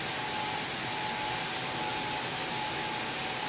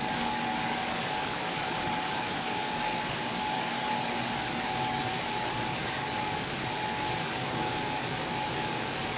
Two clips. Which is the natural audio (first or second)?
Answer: first